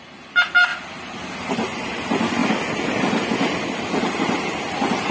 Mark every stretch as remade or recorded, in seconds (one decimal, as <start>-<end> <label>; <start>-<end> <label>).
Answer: 0.0-0.7 remade; 0.7-1.5 recorded; 1.5-2.4 remade; 2.4-4.2 recorded; 4.2-5.1 remade